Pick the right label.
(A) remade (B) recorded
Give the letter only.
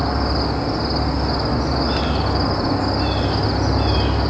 B